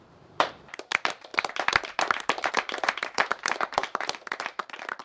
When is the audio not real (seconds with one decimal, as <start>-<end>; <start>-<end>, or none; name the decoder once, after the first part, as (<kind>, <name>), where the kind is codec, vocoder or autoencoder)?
0.0-5.0 (vocoder, BigVGAN v2)